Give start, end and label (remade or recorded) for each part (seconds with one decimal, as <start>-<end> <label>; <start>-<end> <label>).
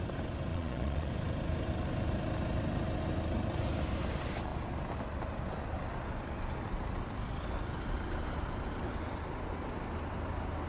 0.0-0.5 recorded; 0.5-1.1 remade; 1.1-10.7 recorded